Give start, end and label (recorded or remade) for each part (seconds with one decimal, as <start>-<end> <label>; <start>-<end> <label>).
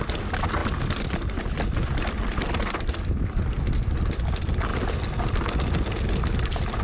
0.0-2.3 recorded; 2.3-3.5 remade; 3.5-4.7 recorded; 4.7-5.3 remade; 5.3-6.8 recorded